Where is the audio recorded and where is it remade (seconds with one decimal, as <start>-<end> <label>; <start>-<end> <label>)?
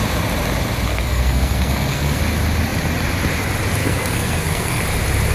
0.0-0.9 recorded; 0.9-2.2 remade; 2.2-3.8 recorded; 3.8-4.8 remade; 4.8-5.3 recorded